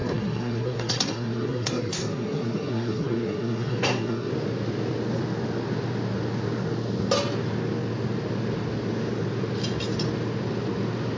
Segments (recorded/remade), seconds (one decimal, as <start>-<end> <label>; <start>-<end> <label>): 0.0-4.3 remade; 4.3-11.2 recorded

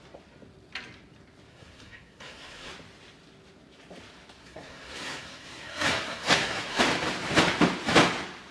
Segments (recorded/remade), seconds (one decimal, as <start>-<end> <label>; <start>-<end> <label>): 0.0-1.5 recorded; 1.5-2.7 remade; 2.7-4.4 recorded; 4.4-6.8 remade; 6.8-8.5 recorded

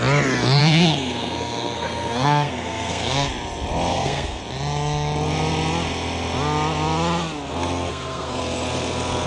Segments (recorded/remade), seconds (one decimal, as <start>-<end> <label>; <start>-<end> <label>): 0.0-0.6 recorded; 0.6-3.3 remade; 3.3-3.9 recorded; 3.9-4.4 remade; 4.4-7.9 recorded; 7.9-8.4 remade; 8.4-9.3 recorded

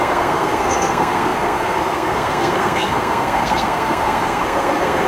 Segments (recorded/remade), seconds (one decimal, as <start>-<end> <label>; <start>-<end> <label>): 0.0-5.1 remade

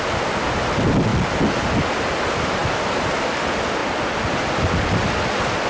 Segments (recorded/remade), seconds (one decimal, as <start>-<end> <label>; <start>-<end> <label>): 0.0-5.7 recorded

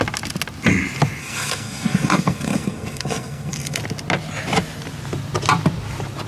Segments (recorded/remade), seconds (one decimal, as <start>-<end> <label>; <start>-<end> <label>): 0.0-1.2 recorded; 1.2-3.8 remade; 3.8-6.3 recorded

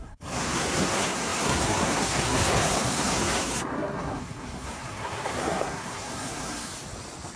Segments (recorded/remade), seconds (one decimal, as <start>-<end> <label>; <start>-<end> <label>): 0.0-6.7 remade; 6.7-7.4 recorded